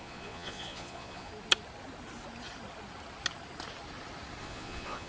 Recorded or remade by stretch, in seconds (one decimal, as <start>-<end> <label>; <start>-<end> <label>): 0.0-1.3 remade; 1.3-4.4 recorded; 4.4-5.1 remade